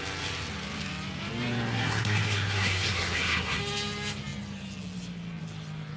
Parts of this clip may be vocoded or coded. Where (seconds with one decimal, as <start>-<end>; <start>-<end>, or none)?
1.7-3.6